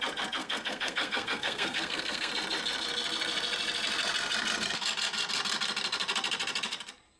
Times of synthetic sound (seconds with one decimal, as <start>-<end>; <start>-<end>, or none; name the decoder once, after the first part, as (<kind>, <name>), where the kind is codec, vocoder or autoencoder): 0.4-2.3 (codec, SNAC)